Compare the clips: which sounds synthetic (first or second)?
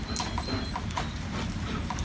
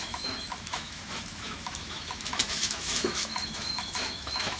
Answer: second